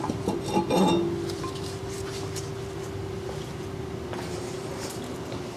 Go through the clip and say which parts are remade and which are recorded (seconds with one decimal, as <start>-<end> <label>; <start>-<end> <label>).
0.0-5.6 recorded